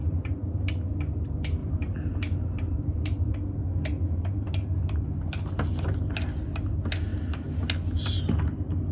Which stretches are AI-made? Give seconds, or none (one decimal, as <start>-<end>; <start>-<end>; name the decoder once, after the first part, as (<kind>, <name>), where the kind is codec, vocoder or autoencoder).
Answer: 0.0-0.7 (vocoder, BigVGAN v2); 1.6-3.3